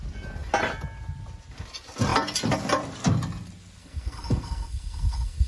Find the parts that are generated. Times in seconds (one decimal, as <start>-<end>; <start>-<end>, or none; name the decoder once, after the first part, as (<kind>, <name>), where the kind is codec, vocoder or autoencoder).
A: 3.8-5.5 (codec, SNAC)